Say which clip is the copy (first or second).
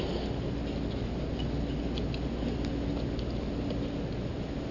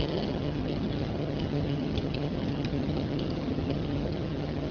second